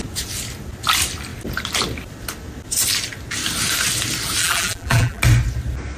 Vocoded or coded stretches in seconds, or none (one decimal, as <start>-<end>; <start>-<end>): 4.4-5.2